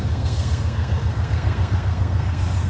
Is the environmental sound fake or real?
fake